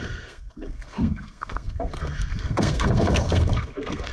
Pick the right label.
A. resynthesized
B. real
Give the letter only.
A